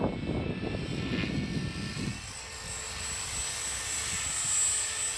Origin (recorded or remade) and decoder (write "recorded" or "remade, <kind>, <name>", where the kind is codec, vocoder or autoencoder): recorded